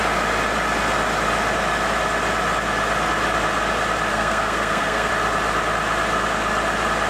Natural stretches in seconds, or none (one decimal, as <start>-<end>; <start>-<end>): 0.0-4.1; 5.1-7.1